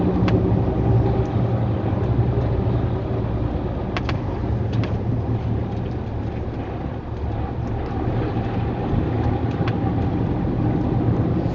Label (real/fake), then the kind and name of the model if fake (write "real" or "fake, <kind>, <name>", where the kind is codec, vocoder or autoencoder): real